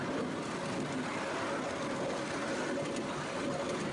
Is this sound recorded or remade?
recorded